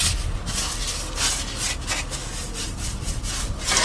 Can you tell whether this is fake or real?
real